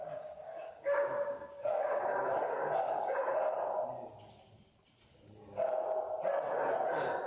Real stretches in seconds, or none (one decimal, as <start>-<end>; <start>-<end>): 2.6-7.3

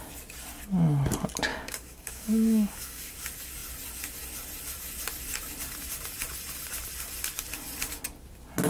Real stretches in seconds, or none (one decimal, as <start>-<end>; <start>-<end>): 0.0-1.5; 3.1-8.7

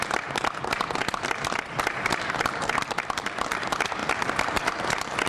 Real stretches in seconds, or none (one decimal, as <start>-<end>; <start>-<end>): 0.0-5.3

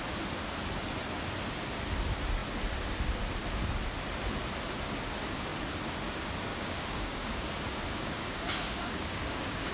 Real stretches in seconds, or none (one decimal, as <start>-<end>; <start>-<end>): 0.0-6.5

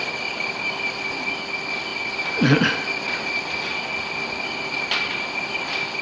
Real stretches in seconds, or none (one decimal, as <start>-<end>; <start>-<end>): 0.0-6.0